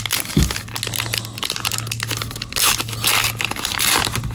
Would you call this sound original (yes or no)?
yes